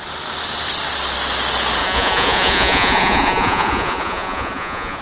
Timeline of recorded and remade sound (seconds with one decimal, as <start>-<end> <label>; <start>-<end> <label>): 0.0-1.8 recorded; 1.8-5.0 remade